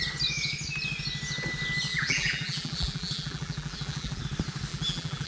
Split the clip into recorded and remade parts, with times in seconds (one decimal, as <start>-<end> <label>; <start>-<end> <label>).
0.0-1.9 recorded; 1.9-4.2 remade; 4.2-4.7 recorded; 4.7-5.3 remade